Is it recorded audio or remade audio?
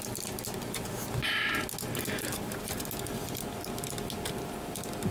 recorded